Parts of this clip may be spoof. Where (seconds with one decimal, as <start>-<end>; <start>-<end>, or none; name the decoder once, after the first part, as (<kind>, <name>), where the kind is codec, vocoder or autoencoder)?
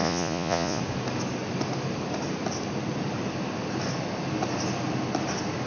0.0-0.8 (vocoder, Vocos)